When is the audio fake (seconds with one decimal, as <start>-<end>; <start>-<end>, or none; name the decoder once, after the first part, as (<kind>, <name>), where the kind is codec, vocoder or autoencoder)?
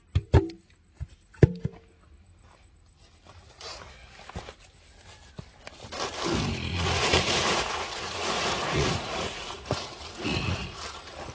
3.4-4.1 (vocoder, Vocos); 6.7-10.8